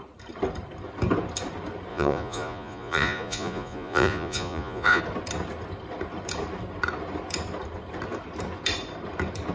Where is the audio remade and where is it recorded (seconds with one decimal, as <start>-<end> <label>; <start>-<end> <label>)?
0.0-1.9 recorded; 1.9-5.0 remade; 5.0-9.5 recorded